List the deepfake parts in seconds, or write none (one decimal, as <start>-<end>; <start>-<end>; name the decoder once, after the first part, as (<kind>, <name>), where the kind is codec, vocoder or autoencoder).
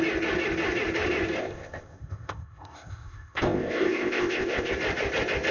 1.4-4.7 (codec, ZipCodec)